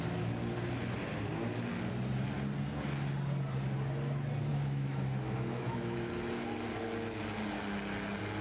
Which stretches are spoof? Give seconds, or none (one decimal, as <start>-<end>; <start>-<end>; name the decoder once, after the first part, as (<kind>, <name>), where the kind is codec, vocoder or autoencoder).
4.5-6.1 (autoencoder, DAC-VAE)